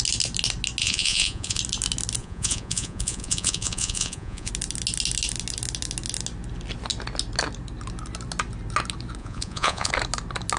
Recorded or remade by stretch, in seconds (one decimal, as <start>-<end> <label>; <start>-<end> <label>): 0.0-0.8 recorded; 0.8-1.6 remade; 1.6-2.2 recorded; 2.2-4.5 remade; 4.5-9.2 recorded; 9.2-9.9 remade; 9.9-10.6 recorded